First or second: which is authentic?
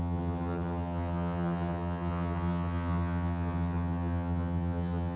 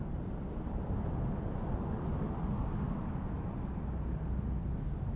second